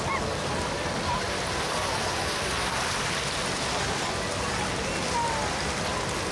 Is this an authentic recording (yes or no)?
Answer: yes